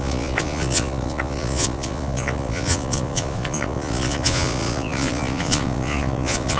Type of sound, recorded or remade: remade